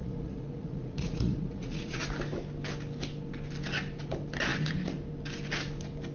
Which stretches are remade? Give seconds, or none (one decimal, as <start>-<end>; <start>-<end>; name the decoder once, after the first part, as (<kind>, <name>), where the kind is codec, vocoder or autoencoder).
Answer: 0.0-2.0 (vocoder, Vocos)